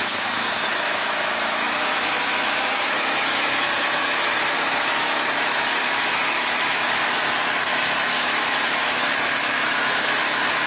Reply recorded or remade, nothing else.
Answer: remade